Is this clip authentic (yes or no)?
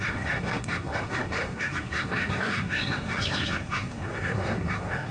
no